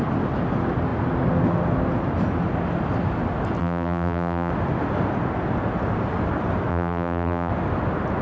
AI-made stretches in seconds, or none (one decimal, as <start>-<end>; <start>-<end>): 3.6-4.5; 6.7-7.5